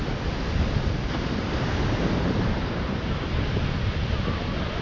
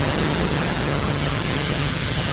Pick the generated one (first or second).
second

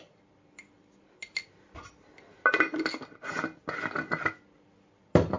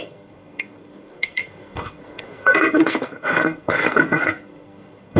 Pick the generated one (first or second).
second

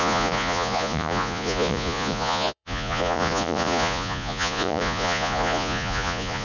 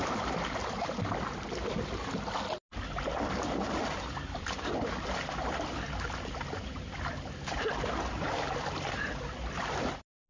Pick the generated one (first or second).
first